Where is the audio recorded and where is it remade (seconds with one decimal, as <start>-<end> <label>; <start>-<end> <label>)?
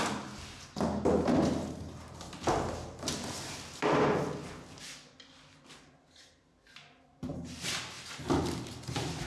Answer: 0.0-9.3 recorded